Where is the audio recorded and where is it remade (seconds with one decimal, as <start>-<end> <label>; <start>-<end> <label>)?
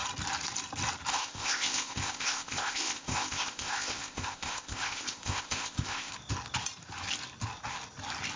0.0-1.1 recorded; 1.1-6.1 remade; 6.1-8.4 recorded